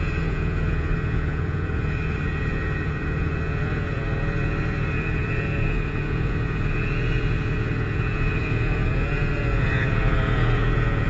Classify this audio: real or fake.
fake